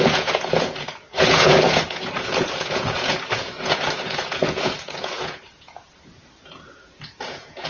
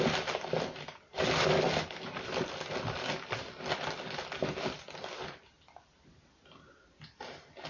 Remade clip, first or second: first